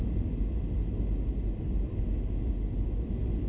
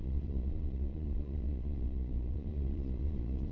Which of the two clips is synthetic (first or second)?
second